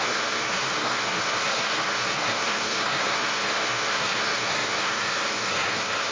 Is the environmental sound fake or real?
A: fake